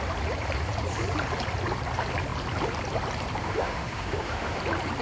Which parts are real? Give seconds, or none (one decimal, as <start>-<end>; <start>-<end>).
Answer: 0.0-3.4; 4.6-5.0